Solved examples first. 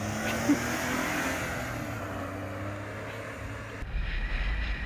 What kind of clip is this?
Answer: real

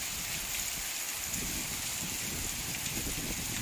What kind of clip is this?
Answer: real